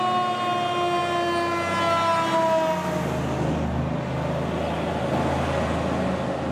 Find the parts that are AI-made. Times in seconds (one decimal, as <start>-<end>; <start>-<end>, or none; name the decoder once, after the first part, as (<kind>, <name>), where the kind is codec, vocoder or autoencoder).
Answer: none